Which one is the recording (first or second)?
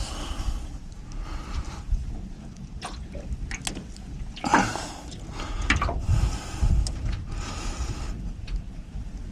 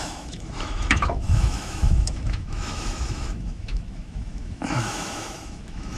first